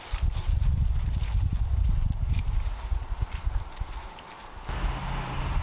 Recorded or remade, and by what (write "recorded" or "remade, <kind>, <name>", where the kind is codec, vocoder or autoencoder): recorded